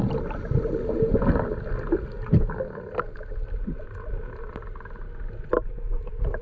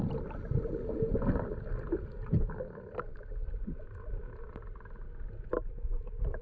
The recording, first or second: first